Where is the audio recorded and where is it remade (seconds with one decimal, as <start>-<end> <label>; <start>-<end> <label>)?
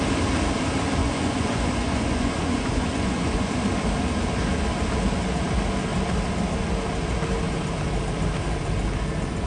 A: 0.0-1.0 recorded; 1.0-3.5 remade; 3.5-9.5 recorded